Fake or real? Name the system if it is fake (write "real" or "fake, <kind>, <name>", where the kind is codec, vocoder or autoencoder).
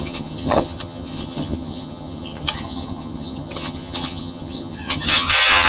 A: fake, vocoder, HiFi-GAN